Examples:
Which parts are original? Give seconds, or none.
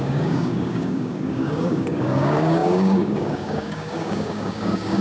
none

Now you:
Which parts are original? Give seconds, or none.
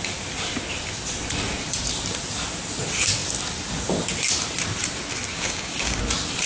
0.0-5.3; 6.0-6.5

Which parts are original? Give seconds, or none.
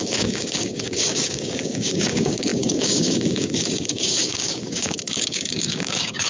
none